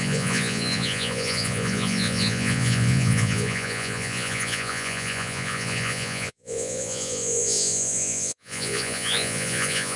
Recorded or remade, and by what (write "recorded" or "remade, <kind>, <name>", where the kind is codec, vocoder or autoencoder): remade, vocoder, Vocos